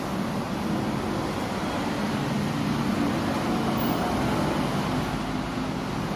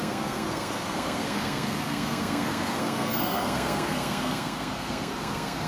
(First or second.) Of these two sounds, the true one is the first